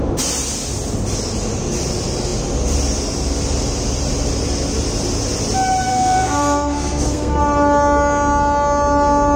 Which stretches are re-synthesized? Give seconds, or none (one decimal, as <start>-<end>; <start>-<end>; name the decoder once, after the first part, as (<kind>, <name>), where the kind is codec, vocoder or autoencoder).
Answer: 5.9-7.4 (codec, SNAC)